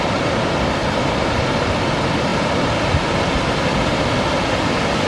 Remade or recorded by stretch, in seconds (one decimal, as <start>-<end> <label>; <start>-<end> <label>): 0.0-0.8 recorded; 0.8-1.7 remade; 1.7-5.1 recorded